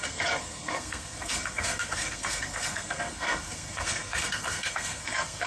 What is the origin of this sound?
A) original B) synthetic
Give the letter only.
B